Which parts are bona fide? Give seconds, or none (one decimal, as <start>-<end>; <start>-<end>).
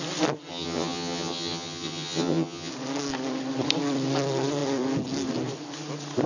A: 0.0-0.5; 2.7-6.3